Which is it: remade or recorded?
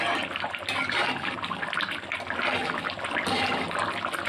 recorded